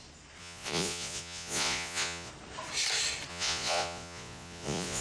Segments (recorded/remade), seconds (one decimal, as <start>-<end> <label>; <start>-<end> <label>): 0.0-0.4 recorded; 0.4-2.3 remade; 2.3-3.3 recorded; 3.3-5.0 remade